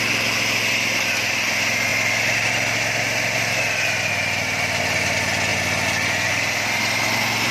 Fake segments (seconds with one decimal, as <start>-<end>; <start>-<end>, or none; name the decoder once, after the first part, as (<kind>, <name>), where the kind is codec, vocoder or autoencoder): none